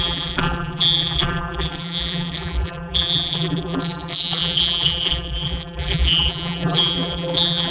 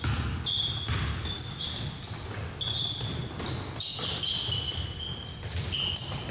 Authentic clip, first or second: second